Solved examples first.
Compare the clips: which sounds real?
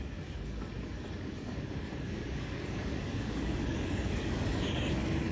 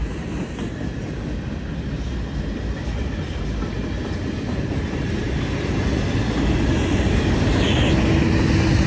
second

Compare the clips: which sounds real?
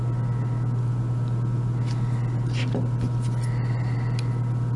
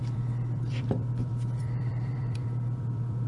first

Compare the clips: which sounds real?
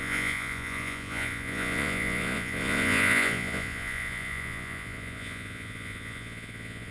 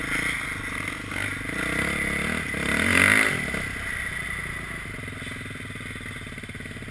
second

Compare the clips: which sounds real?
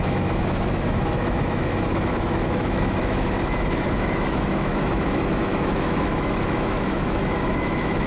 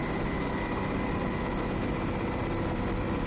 second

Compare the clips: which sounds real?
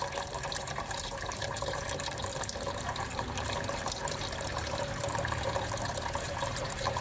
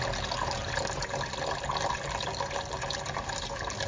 second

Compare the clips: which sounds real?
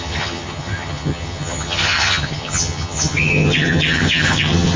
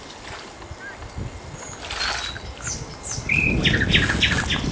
second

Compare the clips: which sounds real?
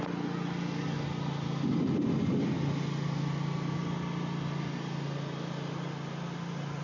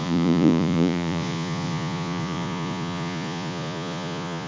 first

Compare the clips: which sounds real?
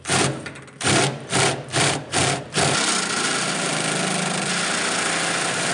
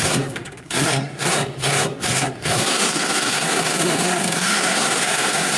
first